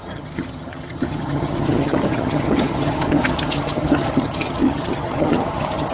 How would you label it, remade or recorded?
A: remade